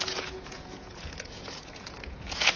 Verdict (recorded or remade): remade